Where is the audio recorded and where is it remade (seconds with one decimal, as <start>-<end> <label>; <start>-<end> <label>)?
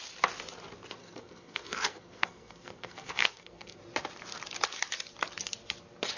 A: 0.0-1.0 recorded; 1.0-3.8 remade; 3.8-6.2 recorded